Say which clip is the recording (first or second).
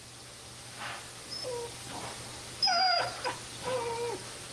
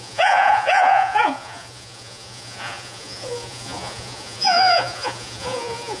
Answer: first